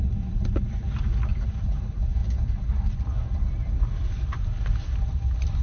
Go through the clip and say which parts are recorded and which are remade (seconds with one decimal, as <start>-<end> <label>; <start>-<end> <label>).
0.0-5.6 recorded